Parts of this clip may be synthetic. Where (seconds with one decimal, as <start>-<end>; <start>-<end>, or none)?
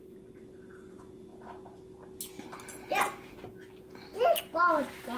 none